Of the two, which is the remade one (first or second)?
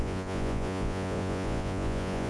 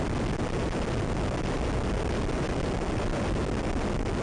first